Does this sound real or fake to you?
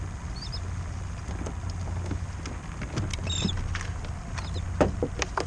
real